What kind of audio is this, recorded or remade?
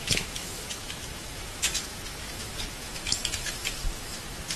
remade